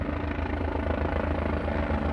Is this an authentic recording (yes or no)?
yes